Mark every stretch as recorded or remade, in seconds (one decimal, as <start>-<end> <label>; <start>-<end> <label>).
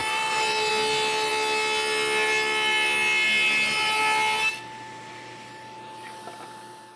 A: 0.0-0.7 remade; 0.7-7.0 recorded